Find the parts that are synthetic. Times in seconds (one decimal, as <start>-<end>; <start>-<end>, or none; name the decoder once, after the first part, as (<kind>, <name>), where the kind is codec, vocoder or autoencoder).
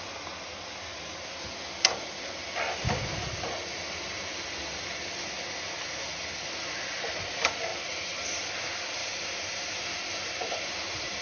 none